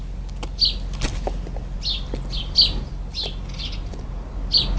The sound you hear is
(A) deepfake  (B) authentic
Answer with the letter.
B